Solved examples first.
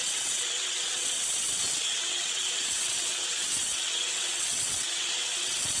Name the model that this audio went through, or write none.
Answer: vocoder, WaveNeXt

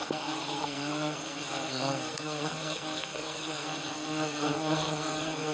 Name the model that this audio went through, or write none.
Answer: codec, SNAC